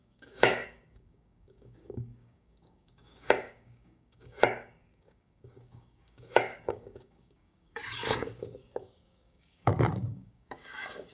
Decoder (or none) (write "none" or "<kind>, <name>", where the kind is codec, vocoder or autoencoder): codec, DAC